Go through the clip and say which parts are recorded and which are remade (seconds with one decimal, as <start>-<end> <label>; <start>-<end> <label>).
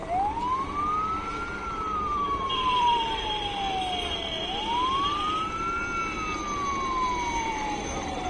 0.0-1.9 recorded; 1.9-3.5 remade; 3.5-7.4 recorded; 7.4-8.3 remade